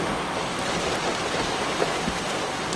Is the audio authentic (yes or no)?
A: yes